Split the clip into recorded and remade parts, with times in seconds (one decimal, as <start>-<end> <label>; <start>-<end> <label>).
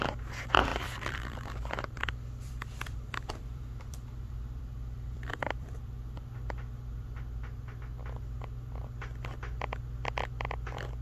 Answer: 0.0-0.7 recorded; 0.7-5.8 remade; 5.8-11.0 recorded